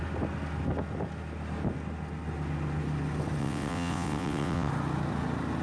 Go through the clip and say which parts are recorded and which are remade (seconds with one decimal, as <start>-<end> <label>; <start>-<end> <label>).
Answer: 0.0-3.4 recorded; 3.4-4.7 remade; 4.7-5.6 recorded